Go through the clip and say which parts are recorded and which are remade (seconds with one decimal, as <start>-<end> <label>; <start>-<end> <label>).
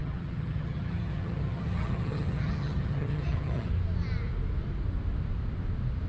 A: 0.0-3.7 remade; 3.7-6.1 recorded